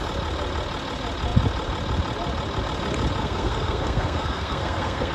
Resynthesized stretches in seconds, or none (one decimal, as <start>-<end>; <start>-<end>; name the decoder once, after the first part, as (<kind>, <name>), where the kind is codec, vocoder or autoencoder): 3.2-5.1 (codec, SNAC)